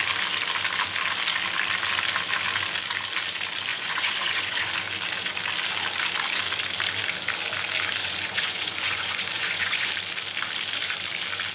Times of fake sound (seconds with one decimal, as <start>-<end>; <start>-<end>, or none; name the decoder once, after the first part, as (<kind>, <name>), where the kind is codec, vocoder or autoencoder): 3.7-4.7 (vocoder, Vocos); 8.0-9.9